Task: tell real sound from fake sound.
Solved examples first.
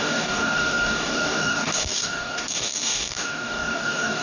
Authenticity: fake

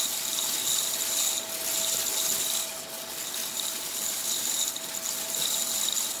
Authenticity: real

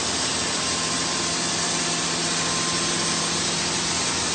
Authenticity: real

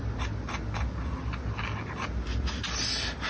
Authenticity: real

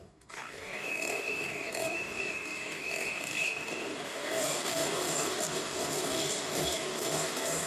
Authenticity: fake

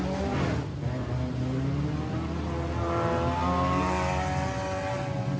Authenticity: real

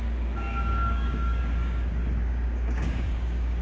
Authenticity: fake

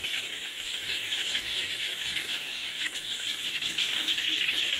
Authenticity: fake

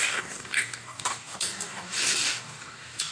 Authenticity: fake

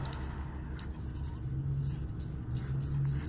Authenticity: real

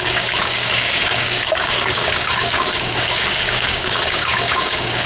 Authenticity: fake